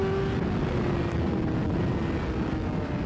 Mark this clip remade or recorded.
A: recorded